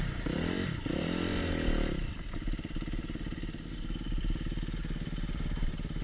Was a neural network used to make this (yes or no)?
yes